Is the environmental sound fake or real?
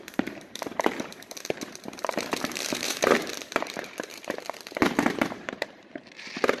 fake